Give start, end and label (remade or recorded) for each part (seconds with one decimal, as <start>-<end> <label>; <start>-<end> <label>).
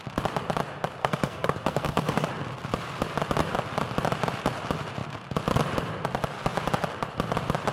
0.0-1.0 recorded; 1.0-2.3 remade; 2.3-7.7 recorded